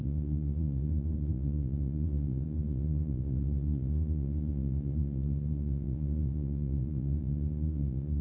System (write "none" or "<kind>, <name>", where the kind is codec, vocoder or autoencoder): vocoder, Vocos